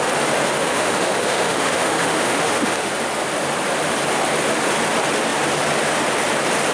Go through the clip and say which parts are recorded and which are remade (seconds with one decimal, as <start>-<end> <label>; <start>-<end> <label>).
0.0-0.6 recorded; 0.6-2.9 remade; 2.9-6.7 recorded